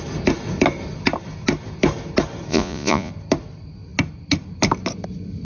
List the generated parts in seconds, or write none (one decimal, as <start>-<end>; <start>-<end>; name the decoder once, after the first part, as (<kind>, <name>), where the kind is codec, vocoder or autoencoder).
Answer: 2.5-3.1 (vocoder, Vocos)